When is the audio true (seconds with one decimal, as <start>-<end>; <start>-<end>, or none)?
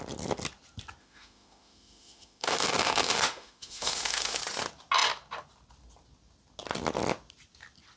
0.0-1.0; 4.4-8.0